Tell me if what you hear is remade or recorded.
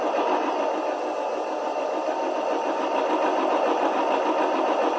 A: recorded